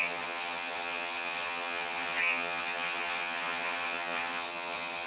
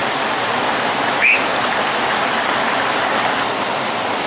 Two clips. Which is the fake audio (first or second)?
first